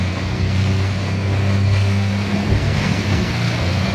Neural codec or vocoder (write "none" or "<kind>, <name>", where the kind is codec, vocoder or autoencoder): codec, SNAC